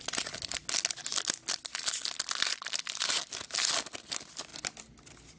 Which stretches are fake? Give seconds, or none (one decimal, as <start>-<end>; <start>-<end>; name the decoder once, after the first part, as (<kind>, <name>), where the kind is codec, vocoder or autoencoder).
none